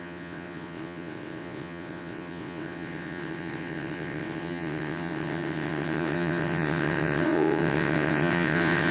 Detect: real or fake fake